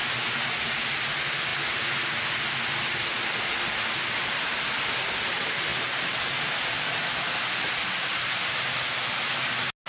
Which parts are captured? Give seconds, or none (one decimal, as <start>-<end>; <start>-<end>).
0.0-9.9